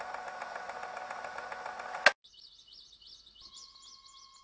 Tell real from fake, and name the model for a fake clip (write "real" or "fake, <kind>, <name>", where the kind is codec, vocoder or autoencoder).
real